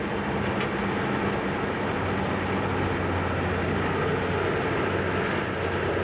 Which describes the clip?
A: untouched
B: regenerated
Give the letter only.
A